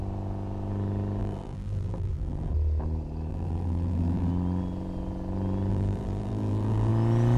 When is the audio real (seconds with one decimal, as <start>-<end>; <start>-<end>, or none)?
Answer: 0.0-1.2; 2.5-3.3; 4.3-5.7; 6.9-7.4